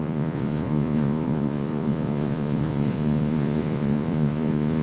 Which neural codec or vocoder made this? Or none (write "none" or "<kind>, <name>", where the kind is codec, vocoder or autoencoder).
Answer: vocoder, Vocos